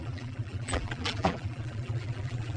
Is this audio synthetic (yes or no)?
yes